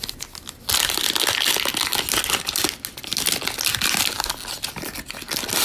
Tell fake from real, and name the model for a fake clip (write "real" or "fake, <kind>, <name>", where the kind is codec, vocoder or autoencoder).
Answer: real